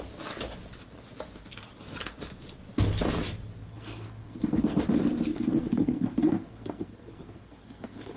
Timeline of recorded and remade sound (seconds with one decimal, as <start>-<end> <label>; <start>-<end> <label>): 0.0-3.6 recorded; 3.6-4.8 remade; 4.8-5.3 recorded; 5.3-8.2 remade